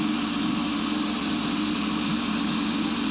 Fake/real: real